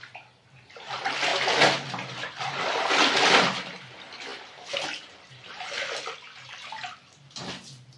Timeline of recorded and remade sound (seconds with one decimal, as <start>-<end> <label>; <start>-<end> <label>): 0.0-4.3 recorded; 4.3-8.0 remade